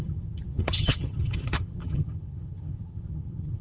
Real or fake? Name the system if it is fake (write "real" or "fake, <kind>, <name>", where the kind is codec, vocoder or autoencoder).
fake, vocoder, HiFi-GAN